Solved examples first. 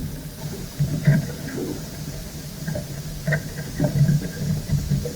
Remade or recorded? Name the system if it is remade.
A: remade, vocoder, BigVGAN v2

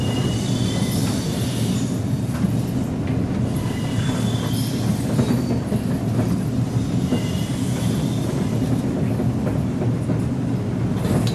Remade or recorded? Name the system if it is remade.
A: recorded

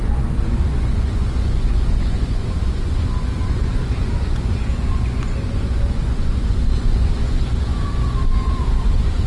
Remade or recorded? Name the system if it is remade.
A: remade, vocoder, Vocos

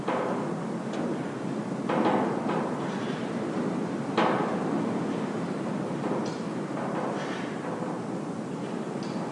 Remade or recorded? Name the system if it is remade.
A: recorded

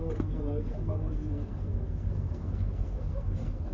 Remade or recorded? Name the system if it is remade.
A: remade, codec, SNAC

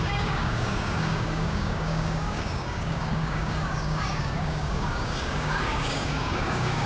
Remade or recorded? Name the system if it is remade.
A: remade, codec, DAC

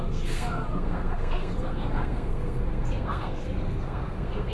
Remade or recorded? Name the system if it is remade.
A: remade, codec, SNAC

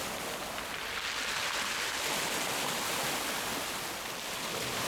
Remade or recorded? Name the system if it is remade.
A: recorded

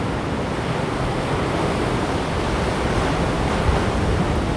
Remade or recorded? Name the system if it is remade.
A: recorded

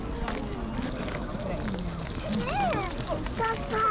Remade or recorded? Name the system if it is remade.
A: recorded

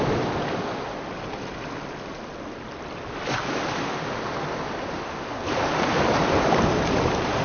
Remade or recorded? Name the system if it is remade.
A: recorded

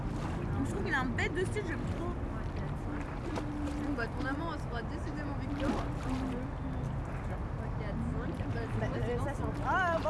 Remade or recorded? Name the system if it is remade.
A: recorded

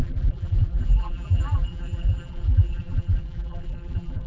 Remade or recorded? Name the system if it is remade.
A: remade, vocoder, BigVGAN v2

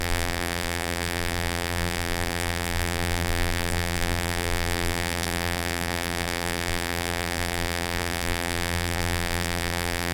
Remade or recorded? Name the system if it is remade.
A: remade, vocoder, BigVGAN v2